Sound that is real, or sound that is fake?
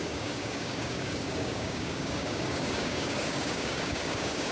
fake